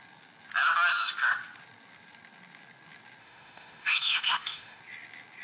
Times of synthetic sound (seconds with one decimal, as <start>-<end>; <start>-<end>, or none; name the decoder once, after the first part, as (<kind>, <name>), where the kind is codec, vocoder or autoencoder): 3.2-4.8 (autoencoder, DAC-VAE)